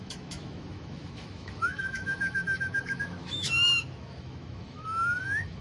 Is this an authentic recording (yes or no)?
no